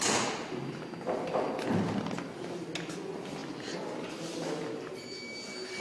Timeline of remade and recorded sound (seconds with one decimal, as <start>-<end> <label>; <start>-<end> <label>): 0.0-5.8 recorded